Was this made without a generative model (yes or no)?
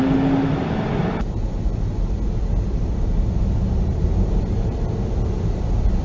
yes